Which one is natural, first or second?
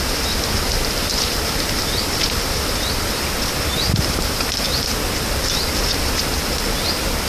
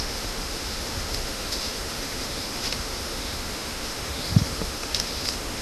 first